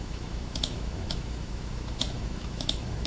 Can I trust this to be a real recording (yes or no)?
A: no